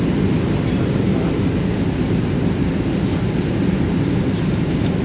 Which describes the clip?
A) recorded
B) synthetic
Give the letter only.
A